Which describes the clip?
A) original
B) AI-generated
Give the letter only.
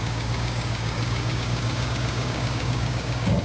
B